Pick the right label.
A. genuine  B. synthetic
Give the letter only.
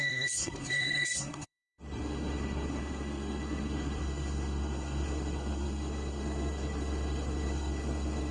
B